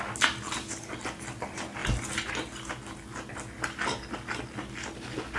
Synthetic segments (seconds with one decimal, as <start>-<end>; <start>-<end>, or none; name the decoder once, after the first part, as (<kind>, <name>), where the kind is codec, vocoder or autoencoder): none

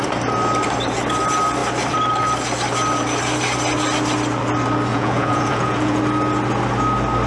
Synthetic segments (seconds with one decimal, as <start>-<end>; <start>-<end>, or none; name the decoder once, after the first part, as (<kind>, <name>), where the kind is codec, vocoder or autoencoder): 4.9-6.0 (vocoder, Vocos)

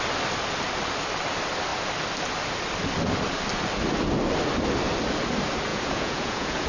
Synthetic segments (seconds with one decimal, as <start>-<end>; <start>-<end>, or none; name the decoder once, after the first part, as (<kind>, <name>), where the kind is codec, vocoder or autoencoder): 5.7-6.7 (vocoder, Vocos)

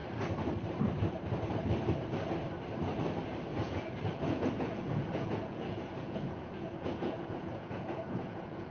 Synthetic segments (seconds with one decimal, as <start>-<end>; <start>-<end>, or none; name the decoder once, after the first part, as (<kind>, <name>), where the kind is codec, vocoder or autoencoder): 3.5-8.7 (vocoder, Vocos)